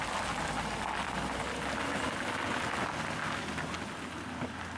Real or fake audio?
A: real